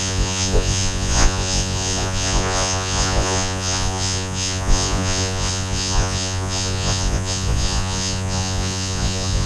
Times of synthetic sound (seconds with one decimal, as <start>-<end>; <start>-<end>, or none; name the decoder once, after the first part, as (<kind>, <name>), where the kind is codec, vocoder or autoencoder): 0.0-9.5 (vocoder, Vocos)